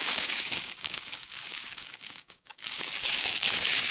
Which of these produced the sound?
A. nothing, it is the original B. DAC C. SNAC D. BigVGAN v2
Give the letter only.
B